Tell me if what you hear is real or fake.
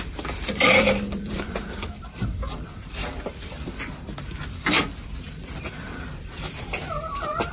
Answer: fake